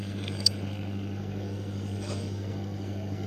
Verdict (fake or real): fake